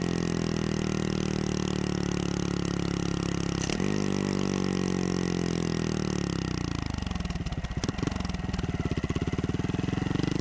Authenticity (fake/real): real